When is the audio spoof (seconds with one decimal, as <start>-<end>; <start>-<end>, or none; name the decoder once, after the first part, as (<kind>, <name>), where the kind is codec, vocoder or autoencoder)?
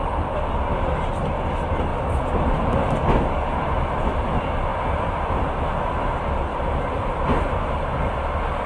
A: 1.9-3.0 (vocoder, BigVGAN v2); 4.7-5.4; 6.5-8.1